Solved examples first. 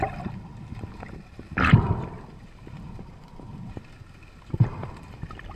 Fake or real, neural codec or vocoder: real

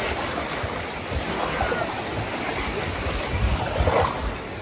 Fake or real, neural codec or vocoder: real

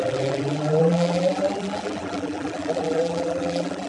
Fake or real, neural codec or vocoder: fake, vocoder, BigVGAN v2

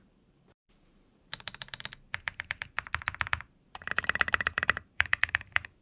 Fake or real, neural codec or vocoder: fake, vocoder, BigVGAN v2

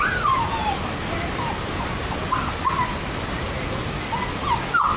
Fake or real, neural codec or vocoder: real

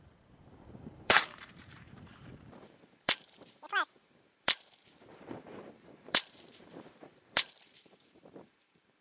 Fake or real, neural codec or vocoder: fake, vocoder, BigVGAN v2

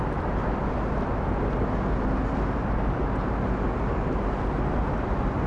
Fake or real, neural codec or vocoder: real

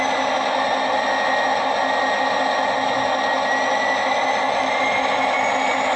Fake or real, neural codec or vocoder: real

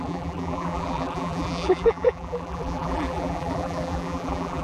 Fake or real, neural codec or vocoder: fake, vocoder, BigVGAN v2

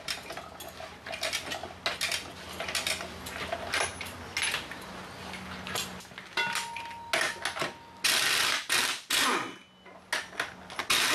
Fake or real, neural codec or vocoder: real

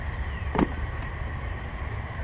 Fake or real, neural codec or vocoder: fake, vocoder, BigVGAN v2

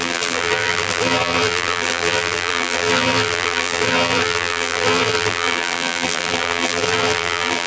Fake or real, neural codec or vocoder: fake, vocoder, BigVGAN v2